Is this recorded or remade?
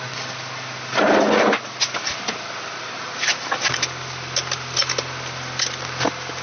recorded